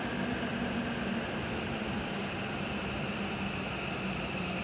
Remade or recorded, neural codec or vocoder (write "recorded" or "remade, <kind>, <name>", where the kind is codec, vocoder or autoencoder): recorded